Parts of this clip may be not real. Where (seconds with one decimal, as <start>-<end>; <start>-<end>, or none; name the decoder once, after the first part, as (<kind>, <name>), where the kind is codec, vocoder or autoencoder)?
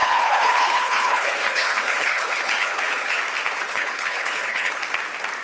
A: 0.0-3.2 (codec, HILCodec); 3.6-4.8